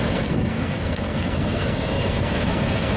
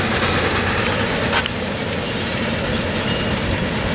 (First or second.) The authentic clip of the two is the second